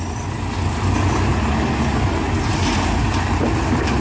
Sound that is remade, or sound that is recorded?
recorded